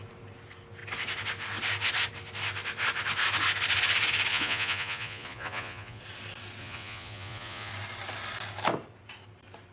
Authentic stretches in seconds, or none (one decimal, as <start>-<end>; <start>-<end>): 0.0-4.3; 6.0-6.6; 7.7-9.7